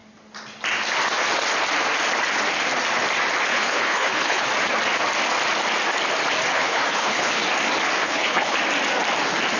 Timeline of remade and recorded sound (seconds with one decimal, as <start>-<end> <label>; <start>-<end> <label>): 0.0-3.5 recorded; 3.5-4.5 remade; 4.5-6.5 recorded; 6.5-7.4 remade; 7.4-8.0 recorded; 8.0-8.6 remade; 8.6-9.6 recorded